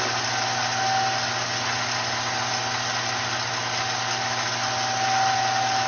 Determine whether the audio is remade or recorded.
recorded